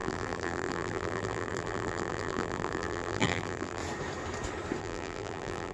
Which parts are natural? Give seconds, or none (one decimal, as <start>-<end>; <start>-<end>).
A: 3.8-4.8